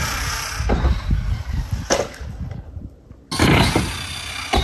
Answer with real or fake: real